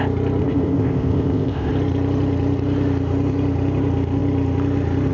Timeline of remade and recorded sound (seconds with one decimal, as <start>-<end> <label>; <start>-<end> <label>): 0.0-0.4 recorded; 0.4-1.7 remade; 1.7-5.1 recorded